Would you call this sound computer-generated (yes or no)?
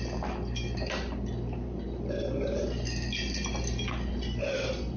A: no